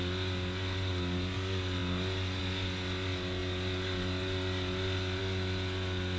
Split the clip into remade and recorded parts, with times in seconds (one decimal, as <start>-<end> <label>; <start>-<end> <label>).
0.0-6.2 recorded